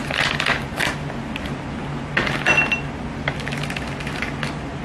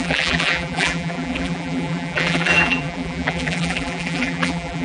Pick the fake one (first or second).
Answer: second